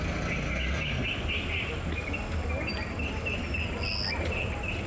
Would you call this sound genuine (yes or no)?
yes